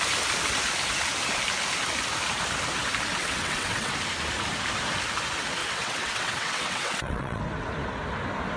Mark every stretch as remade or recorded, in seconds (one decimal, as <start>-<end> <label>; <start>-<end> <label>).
0.0-3.2 recorded; 3.2-3.9 remade; 3.9-5.6 recorded; 5.6-7.4 remade; 7.4-8.6 recorded